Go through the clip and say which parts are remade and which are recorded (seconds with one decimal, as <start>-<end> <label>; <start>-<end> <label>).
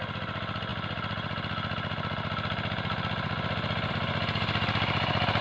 0.0-5.4 recorded